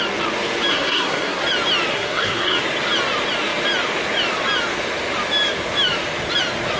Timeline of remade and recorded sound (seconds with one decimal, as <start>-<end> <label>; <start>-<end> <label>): 0.0-0.7 recorded; 0.7-1.4 remade; 1.4-1.9 recorded; 1.9-2.6 remade; 2.6-6.8 recorded